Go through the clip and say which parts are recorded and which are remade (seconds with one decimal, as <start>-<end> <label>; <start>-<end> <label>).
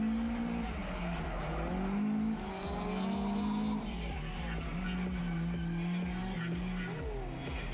0.0-7.7 recorded